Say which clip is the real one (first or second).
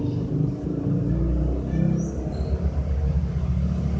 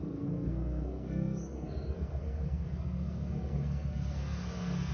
first